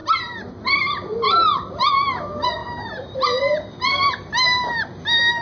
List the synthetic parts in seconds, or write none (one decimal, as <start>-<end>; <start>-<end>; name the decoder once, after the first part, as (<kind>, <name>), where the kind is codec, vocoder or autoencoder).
0.0-1.9 (vocoder, BigVGAN v2)